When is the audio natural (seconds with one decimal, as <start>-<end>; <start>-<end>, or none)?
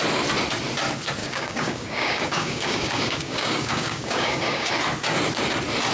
0.0-1.2; 4.7-5.9